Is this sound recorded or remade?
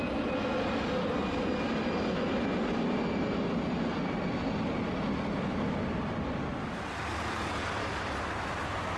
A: recorded